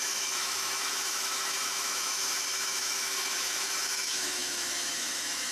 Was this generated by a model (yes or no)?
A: yes